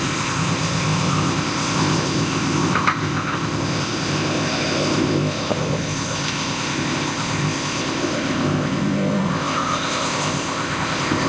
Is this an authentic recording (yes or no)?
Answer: no